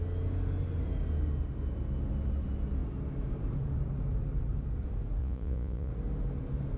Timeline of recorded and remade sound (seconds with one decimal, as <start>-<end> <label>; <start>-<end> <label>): 0.0-5.2 recorded; 5.2-5.9 remade; 5.9-6.8 recorded